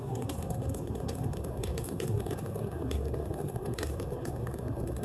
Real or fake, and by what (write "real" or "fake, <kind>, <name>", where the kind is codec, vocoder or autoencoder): fake, codec, SNAC